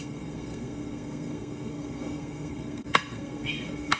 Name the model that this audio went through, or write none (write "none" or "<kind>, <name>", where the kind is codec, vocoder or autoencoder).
codec, SNAC